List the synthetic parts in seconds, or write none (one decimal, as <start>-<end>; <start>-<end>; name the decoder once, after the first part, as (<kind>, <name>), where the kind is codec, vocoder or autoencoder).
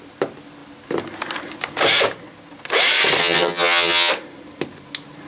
3.2-4.1 (vocoder, HiFi-GAN)